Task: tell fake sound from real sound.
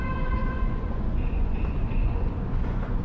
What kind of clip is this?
fake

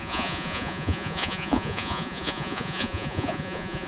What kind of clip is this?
fake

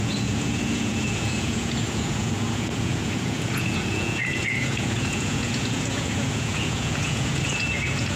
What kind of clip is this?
fake